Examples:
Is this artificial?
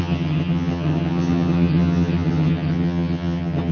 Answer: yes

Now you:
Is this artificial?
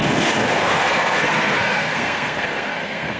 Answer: yes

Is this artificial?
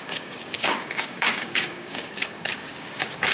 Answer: yes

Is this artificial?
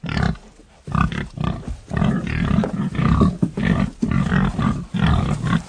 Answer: no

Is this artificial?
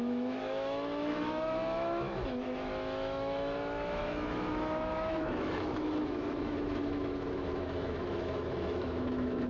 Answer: yes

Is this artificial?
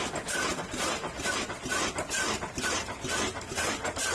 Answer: no